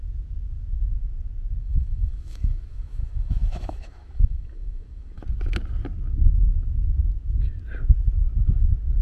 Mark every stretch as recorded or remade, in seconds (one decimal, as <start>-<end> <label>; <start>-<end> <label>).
0.0-1.6 recorded; 1.6-5.2 remade; 5.2-9.0 recorded